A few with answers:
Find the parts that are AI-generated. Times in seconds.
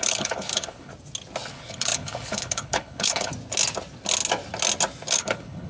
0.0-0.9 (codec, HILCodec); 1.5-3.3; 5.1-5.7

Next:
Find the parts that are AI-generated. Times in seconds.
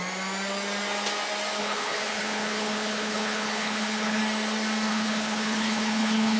1.6-4.2 (codec, HILCodec); 4.9-6.4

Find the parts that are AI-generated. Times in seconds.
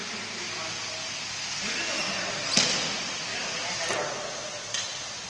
none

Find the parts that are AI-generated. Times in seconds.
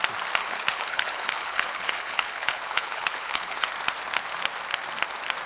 0.4-3.7 (codec, HILCodec)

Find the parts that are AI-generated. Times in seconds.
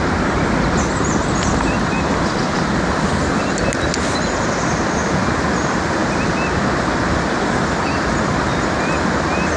none